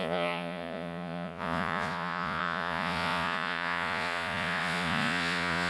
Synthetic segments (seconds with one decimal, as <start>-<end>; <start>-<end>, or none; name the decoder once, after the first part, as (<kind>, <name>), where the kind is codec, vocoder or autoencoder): 0.0-5.7 (vocoder, Vocos)